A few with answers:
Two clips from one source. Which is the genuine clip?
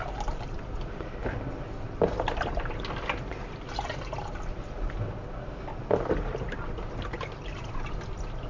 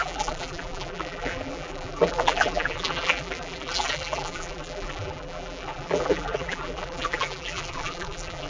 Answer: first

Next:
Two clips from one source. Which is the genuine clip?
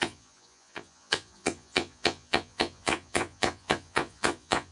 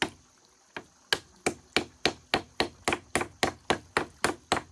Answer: second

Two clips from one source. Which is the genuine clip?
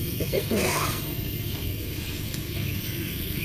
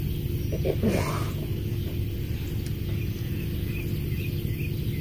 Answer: second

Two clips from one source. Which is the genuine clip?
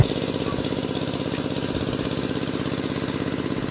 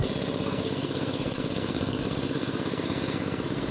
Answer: first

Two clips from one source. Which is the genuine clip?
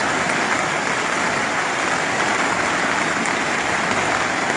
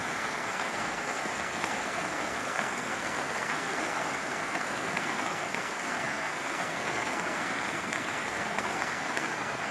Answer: first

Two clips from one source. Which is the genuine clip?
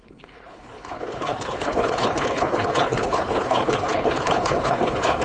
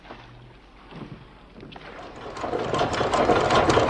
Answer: second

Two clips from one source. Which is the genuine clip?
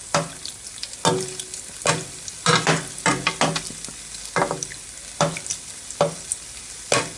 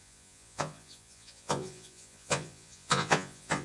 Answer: first